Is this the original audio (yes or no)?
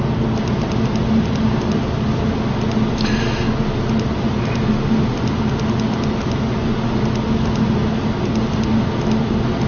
yes